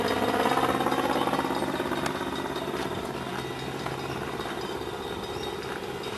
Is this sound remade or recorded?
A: recorded